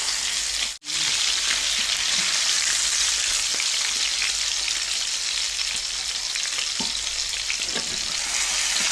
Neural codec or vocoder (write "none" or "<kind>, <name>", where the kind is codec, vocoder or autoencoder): none